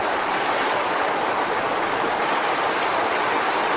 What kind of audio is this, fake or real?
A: real